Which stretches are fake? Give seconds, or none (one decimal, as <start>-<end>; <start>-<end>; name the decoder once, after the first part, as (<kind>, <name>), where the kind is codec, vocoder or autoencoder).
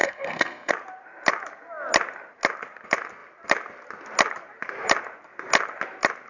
0.0-0.7 (codec, SNAC)